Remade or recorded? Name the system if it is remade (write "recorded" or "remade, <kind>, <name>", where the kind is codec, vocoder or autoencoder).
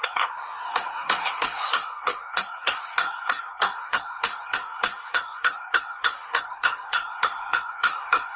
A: remade, codec, SNAC